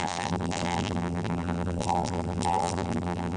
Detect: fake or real fake